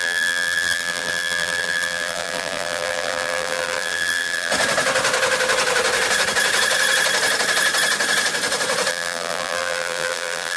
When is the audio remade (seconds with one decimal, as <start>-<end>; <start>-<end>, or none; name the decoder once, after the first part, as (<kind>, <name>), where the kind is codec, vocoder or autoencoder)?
0.0-4.5 (vocoder, BigVGAN v2); 8.9-10.6